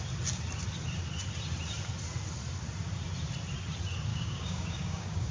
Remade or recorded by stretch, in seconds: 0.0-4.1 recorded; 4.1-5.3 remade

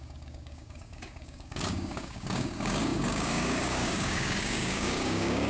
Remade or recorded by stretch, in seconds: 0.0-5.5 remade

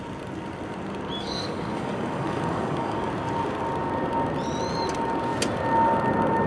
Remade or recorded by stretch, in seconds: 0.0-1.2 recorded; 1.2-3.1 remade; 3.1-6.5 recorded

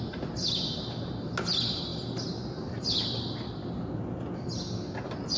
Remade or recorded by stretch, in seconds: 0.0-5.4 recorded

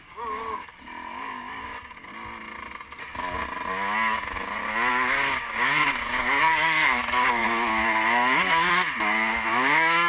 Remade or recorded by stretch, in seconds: 0.0-0.7 remade; 0.7-1.2 recorded; 1.2-2.1 remade; 2.1-4.9 recorded; 4.9-10.1 remade

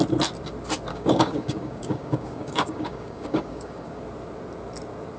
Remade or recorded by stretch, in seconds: 0.0-0.9 recorded; 0.9-4.0 remade; 4.0-5.2 recorded